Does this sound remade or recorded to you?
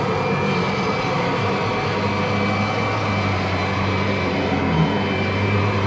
recorded